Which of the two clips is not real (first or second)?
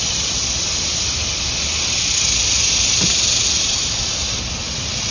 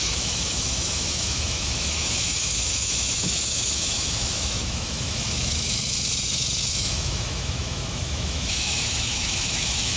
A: second